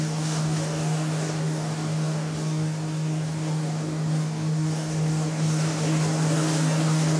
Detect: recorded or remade remade